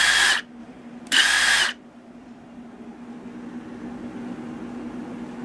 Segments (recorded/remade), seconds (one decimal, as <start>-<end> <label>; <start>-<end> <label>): 0.0-0.6 recorded; 0.6-1.2 remade; 1.2-5.4 recorded